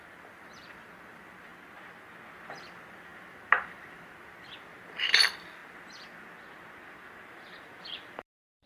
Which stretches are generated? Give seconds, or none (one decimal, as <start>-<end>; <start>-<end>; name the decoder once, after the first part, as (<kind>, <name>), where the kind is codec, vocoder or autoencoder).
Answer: 0.0-1.5 (vocoder, BigVGAN v2); 2.4-5.6; 7.3-8.7